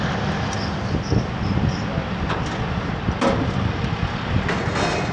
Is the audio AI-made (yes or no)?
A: no